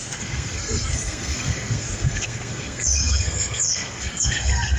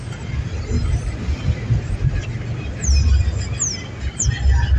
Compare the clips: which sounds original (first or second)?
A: second